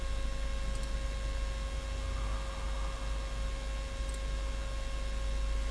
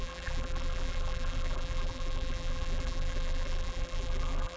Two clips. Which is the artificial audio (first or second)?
second